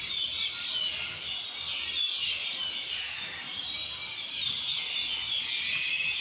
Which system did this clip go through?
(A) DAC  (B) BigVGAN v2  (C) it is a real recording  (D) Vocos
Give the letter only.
C